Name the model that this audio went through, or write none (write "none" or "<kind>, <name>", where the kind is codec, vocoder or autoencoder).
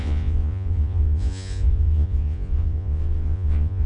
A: vocoder, Vocos